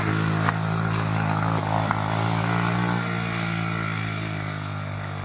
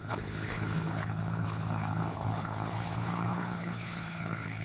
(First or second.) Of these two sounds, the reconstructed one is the second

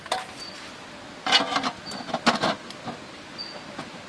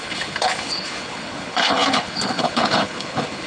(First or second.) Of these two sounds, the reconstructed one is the second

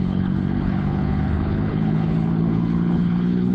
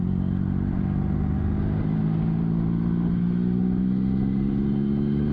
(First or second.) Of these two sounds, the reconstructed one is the first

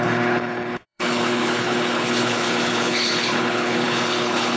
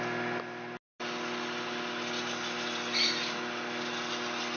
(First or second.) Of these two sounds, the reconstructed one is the first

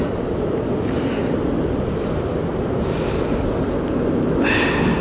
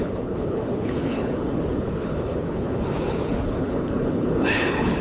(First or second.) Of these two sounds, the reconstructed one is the second